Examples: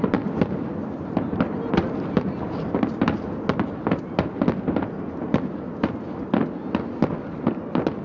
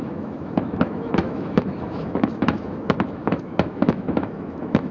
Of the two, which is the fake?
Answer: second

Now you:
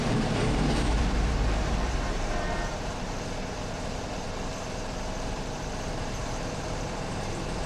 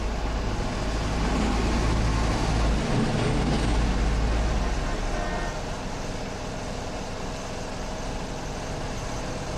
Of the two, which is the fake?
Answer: first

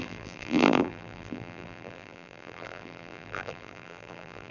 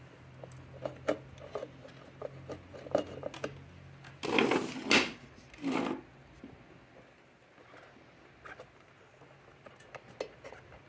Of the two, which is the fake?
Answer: first